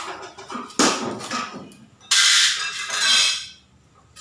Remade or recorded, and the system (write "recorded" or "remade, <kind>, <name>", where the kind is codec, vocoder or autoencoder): recorded